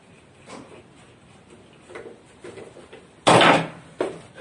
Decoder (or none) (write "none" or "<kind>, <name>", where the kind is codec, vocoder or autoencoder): none